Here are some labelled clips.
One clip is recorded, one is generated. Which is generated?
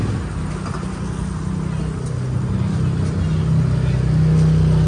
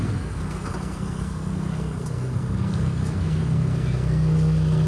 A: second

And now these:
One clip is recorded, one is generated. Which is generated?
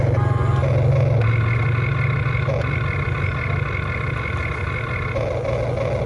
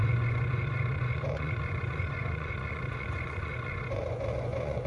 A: second